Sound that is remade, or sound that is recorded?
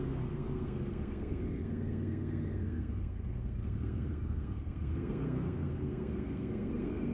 remade